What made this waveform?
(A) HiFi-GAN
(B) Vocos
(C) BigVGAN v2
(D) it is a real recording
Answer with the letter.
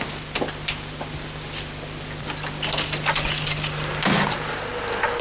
D